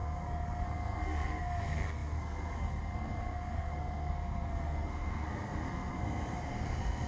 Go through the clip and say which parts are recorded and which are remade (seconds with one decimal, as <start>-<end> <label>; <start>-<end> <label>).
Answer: 0.0-7.1 remade